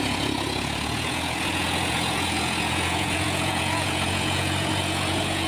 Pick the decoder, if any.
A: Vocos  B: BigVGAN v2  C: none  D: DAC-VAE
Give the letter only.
A